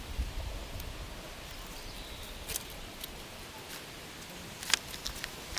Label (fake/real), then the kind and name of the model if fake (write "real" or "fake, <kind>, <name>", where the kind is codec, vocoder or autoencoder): real